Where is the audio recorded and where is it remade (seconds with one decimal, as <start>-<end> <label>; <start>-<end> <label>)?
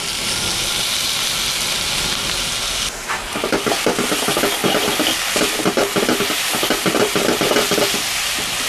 0.0-8.7 recorded